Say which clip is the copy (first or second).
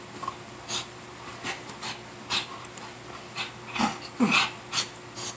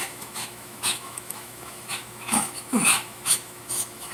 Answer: second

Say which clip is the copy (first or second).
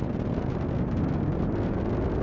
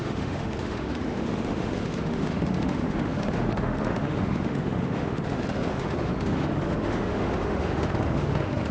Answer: second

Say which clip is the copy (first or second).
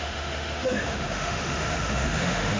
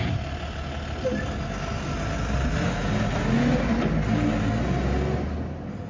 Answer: first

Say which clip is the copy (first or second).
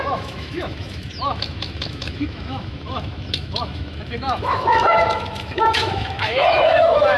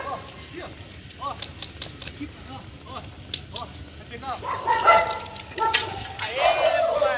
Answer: first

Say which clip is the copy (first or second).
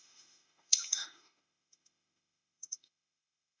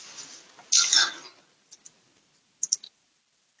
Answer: first